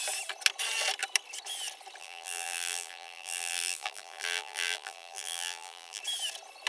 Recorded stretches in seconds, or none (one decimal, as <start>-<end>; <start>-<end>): 0.0-2.0; 6.0-6.7